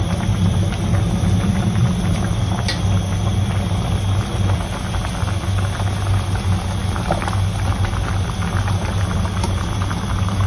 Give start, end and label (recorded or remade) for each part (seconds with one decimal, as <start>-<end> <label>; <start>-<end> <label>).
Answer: 0.0-10.5 recorded